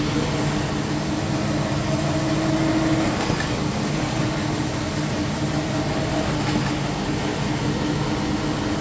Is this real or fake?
real